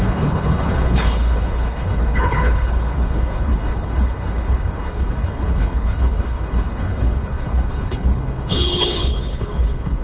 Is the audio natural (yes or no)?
no